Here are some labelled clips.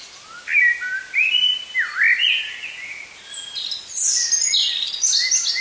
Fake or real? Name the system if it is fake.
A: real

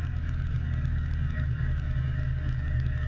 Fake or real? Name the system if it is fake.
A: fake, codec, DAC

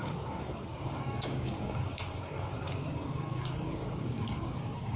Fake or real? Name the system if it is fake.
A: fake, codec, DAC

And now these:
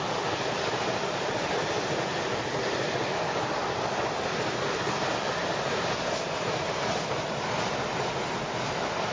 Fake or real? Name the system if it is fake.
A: real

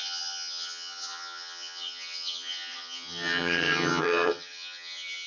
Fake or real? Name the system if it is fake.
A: fake, vocoder, HiFi-GAN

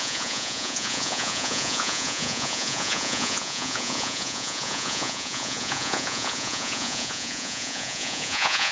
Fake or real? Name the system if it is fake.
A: fake, vocoder, Vocos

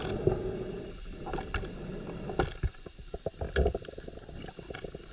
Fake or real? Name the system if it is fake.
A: real